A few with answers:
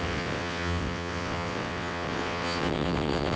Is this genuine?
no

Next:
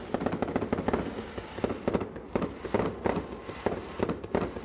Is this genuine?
yes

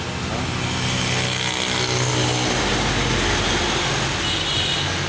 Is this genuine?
yes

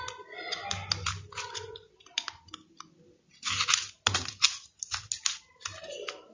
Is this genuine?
yes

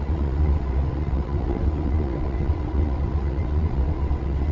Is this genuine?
no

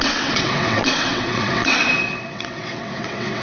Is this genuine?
no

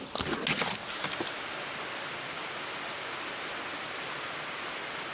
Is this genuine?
yes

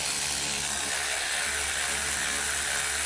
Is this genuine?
yes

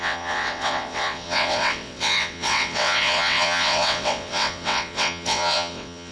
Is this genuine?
no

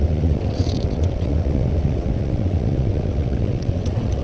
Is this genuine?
no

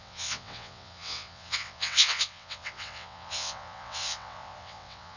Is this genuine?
no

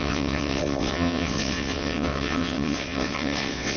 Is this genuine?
no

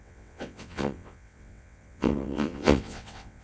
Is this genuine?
no